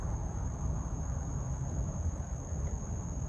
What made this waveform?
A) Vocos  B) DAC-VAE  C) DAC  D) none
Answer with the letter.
B